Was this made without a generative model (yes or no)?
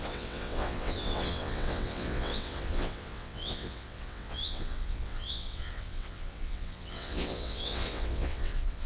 no